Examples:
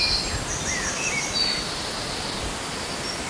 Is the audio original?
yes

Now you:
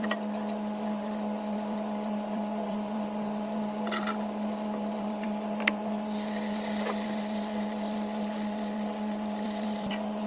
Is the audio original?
no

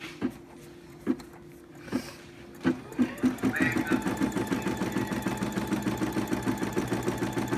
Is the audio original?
yes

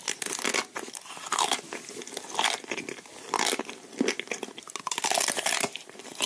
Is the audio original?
yes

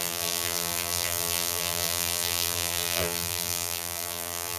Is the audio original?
no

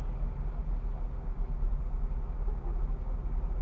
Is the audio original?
yes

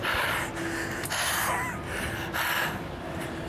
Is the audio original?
yes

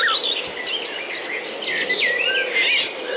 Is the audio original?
yes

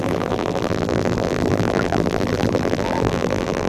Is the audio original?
no